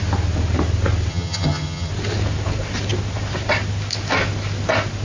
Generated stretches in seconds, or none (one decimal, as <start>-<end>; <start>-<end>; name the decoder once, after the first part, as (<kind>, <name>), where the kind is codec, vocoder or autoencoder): 1.1-1.9 (vocoder, HiFi-GAN)